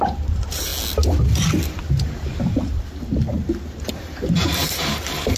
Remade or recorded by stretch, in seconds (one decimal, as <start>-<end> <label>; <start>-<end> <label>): 0.0-0.7 remade; 0.7-3.9 recorded; 3.9-5.4 remade